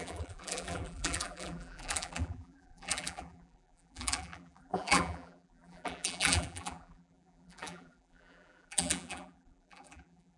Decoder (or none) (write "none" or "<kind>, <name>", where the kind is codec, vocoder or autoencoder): vocoder, BigVGAN v2